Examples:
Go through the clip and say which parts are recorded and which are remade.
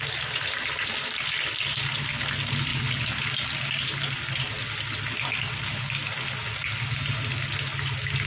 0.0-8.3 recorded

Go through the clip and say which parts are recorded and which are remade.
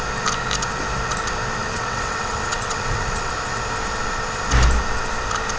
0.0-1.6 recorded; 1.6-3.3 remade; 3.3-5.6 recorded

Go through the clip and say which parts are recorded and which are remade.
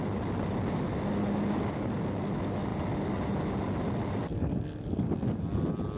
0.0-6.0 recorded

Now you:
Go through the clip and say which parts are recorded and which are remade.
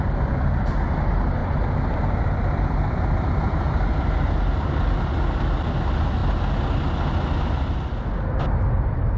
0.0-9.2 recorded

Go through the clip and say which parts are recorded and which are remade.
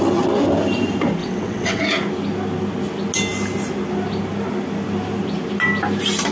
0.0-1.2 recorded; 1.2-1.8 remade; 1.8-6.3 recorded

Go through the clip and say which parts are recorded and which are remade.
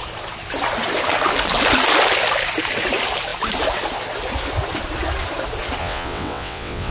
0.0-5.8 recorded; 5.8-6.9 remade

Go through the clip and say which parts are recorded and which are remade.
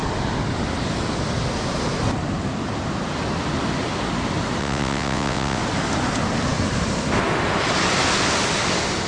0.0-4.6 recorded; 4.6-5.6 remade; 5.6-9.1 recorded